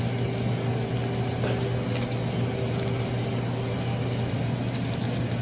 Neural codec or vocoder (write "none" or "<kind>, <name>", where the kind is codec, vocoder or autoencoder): none